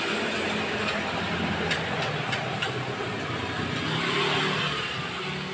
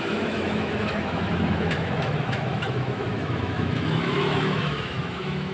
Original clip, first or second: first